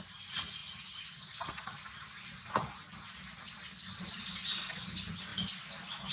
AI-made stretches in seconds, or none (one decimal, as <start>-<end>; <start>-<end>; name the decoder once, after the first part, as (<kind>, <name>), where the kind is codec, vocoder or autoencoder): none